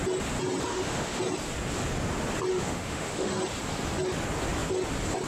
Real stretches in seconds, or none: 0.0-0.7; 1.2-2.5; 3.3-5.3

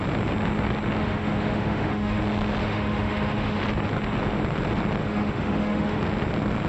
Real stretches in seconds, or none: 0.0-1.0; 2.2-2.6; 3.6-5.0; 6.0-6.7

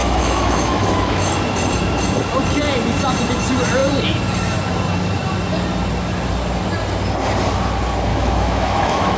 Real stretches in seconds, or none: 1.3-8.1

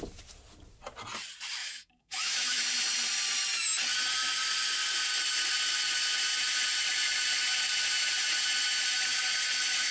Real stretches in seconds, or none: 0.0-1.6; 2.6-9.9

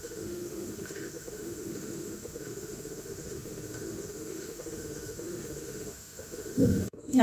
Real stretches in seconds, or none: none

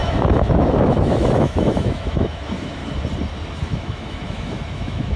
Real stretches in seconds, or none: 2.8-3.5

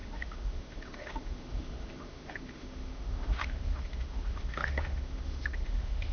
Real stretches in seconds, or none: none

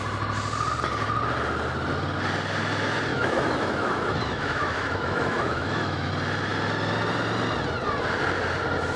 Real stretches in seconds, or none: 0.0-3.1; 6.1-9.0